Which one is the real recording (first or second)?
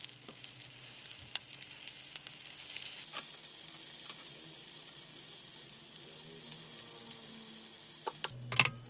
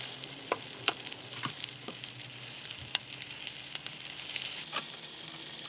first